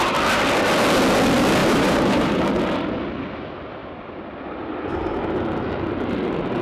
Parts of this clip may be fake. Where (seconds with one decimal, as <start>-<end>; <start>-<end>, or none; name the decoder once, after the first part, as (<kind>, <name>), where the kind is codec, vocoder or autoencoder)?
1.6-2.4 (vocoder, BigVGAN v2)

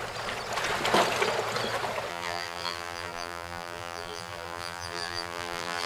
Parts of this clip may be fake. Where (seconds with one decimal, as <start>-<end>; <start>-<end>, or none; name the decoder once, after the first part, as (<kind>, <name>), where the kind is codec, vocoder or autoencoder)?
2.1-5.9 (vocoder, BigVGAN v2)

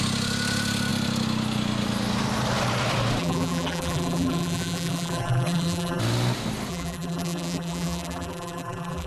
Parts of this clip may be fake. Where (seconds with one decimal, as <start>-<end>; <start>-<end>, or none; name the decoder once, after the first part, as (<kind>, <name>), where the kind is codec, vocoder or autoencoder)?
3.2-6.0 (vocoder, BigVGAN v2); 6.7-9.1

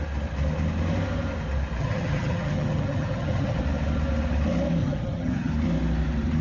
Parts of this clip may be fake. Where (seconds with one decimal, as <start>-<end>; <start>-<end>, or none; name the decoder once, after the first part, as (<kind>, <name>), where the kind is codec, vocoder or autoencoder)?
1.8-3.6 (vocoder, HiFi-GAN); 4.8-5.5

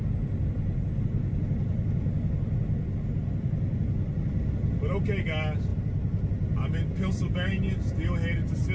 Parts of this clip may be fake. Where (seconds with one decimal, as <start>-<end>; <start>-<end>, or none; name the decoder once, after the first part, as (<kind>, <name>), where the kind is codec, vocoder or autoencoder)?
none

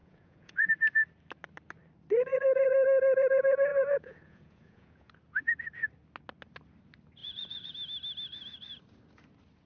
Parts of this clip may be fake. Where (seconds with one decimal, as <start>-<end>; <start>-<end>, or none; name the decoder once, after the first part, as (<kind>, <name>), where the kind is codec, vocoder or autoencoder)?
0.0-0.7 (vocoder, Vocos); 3.7-5.1; 7.2-7.7

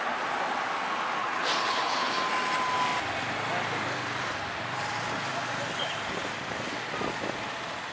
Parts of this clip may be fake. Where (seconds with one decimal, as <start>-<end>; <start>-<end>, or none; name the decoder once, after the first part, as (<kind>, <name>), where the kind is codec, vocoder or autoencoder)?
1.2-2.1 (codec, HILCodec)